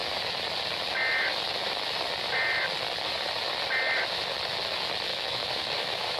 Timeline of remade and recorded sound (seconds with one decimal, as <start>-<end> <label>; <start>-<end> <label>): 0.0-5.1 recorded; 5.1-6.2 remade